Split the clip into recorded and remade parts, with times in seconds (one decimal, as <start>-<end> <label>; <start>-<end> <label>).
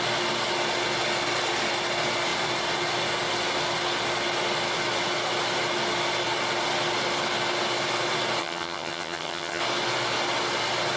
0.0-8.4 recorded; 8.4-9.6 remade; 9.6-11.0 recorded